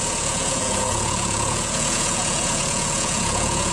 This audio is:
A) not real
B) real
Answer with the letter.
A